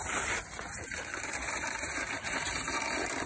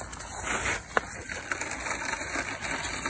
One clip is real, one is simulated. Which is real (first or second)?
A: second